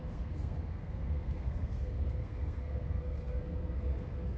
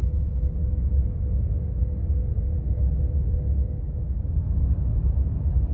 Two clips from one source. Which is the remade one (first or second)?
first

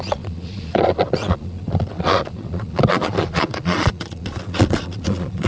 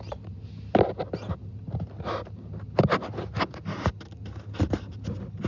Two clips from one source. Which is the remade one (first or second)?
first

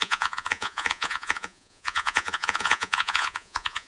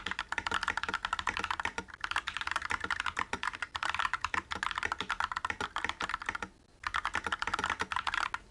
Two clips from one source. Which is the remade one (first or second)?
first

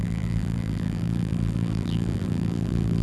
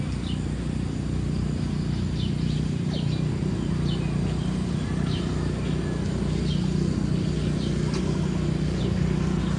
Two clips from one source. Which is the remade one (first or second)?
first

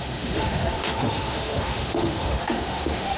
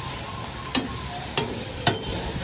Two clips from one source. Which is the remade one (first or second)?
first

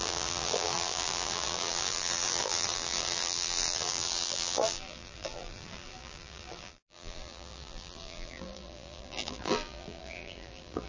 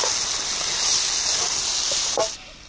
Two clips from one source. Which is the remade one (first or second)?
first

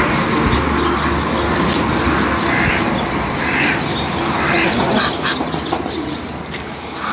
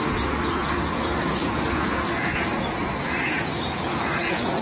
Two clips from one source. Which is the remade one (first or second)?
second